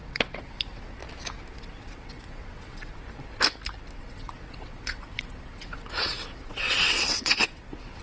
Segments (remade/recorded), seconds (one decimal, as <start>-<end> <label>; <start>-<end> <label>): 0.0-1.0 remade; 1.0-1.6 recorded; 1.6-2.9 remade; 2.9-4.0 recorded; 4.0-8.0 remade